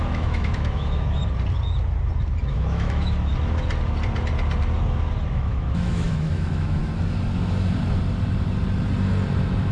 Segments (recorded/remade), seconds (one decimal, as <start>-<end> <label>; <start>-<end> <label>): 0.0-1.2 remade; 1.2-2.4 recorded; 2.4-3.3 remade; 3.3-5.3 recorded; 5.3-6.8 remade; 6.8-9.7 recorded